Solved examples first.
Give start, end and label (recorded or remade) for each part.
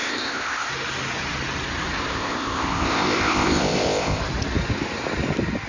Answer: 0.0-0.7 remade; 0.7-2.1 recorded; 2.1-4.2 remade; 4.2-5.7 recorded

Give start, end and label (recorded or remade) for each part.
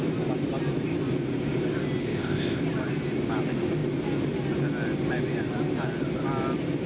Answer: 0.0-2.0 recorded; 2.0-2.6 remade; 2.6-6.9 recorded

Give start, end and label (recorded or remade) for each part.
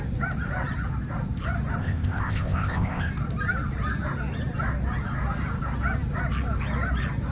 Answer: 0.0-1.8 recorded; 1.8-3.1 remade; 3.1-7.3 recorded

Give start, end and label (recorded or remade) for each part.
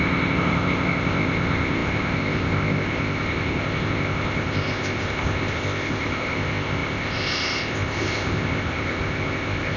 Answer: 0.0-9.8 remade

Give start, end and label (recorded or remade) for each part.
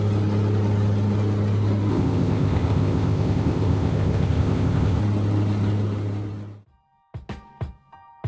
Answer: 0.0-1.9 recorded; 1.9-5.0 remade; 5.0-8.3 recorded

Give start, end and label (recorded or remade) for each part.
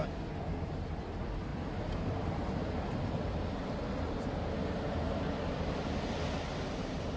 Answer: 0.0-7.2 recorded